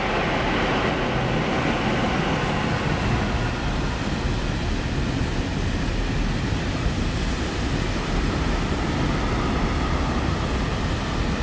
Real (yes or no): yes